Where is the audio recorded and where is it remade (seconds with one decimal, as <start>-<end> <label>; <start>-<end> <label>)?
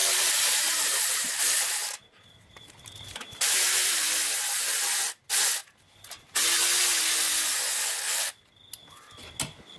0.0-1.4 remade; 1.4-1.8 recorded; 1.8-4.1 remade; 4.1-9.8 recorded